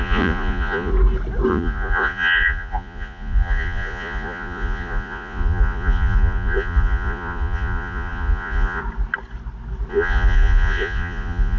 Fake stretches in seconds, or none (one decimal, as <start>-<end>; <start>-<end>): 0.0-0.9; 1.5-8.8; 9.9-11.6